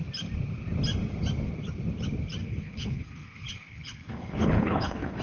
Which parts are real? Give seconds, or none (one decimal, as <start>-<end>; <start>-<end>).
0.0-2.4